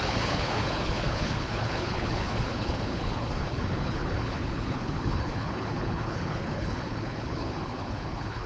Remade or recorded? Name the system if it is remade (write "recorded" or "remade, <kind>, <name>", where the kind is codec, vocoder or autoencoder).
remade, codec, HILCodec